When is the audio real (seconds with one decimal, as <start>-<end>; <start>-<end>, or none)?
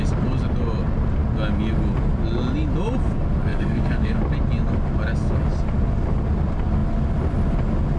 0.0-3.5; 4.2-8.0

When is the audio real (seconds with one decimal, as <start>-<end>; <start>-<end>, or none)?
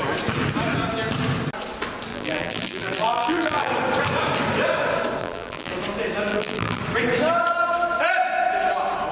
0.0-2.1; 3.7-5.2; 5.7-6.3; 6.8-9.1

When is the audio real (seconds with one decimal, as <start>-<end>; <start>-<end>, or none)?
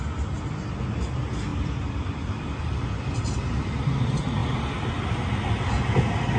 0.0-1.5; 3.9-4.4; 5.1-6.4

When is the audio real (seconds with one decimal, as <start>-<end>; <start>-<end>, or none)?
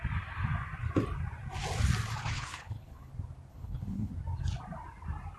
0.0-2.2; 3.1-3.5; 4.1-5.4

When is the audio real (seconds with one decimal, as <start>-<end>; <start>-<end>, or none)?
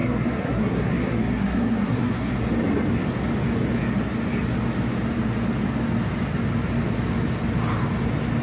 2.3-8.4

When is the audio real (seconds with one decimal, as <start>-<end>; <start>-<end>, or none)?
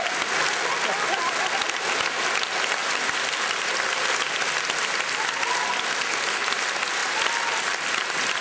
0.0-2.8; 4.2-8.4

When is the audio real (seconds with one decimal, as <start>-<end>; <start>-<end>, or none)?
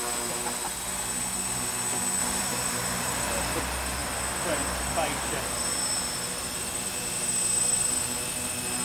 0.0-2.2; 3.6-8.8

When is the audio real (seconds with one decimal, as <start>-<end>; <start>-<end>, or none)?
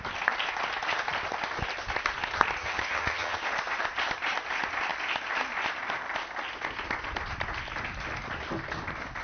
0.0-2.6; 3.4-9.2